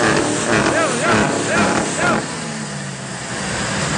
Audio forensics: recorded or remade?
recorded